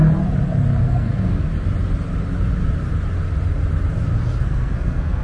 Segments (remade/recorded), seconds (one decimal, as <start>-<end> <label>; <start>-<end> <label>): 0.0-0.8 recorded; 0.8-1.5 remade; 1.5-4.4 recorded; 4.4-5.2 remade